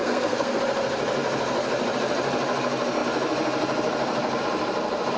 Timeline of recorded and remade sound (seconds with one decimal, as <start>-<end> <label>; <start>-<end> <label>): 0.0-0.6 remade; 0.6-5.2 recorded